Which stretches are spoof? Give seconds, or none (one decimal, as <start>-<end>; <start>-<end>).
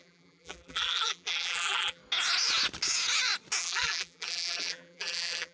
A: 0.0-2.0; 3.6-5.5